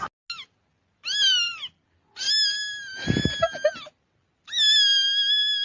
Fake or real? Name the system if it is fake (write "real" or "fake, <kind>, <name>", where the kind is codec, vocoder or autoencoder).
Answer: real